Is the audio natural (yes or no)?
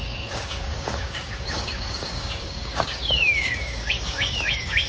no